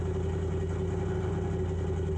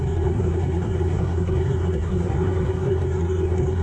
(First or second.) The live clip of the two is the first